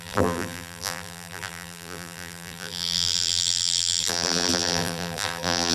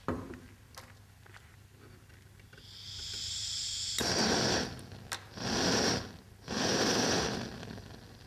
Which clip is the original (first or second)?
second